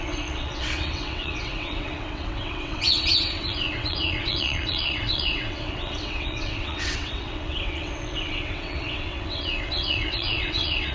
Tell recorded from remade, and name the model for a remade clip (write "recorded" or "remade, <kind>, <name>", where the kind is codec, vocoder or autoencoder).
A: remade, vocoder, WaveNeXt